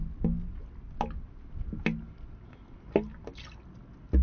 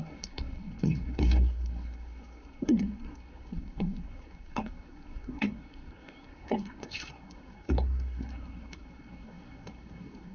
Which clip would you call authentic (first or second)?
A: first